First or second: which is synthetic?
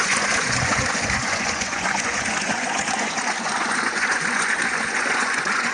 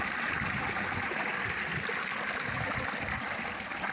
first